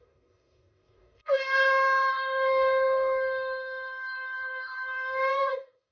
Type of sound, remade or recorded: remade